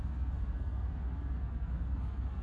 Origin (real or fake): fake